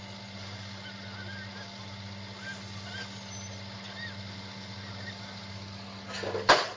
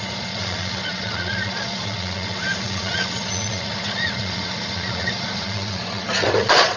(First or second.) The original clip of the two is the first